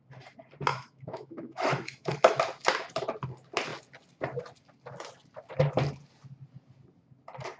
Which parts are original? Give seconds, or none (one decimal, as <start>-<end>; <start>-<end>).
0.0-0.7; 2.4-7.6